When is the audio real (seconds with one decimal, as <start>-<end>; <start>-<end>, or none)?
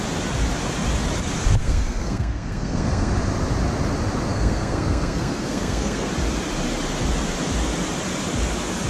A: 0.0-1.6; 3.1-4.3; 6.1-8.9